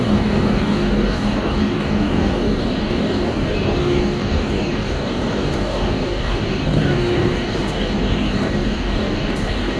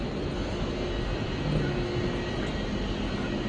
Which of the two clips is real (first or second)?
second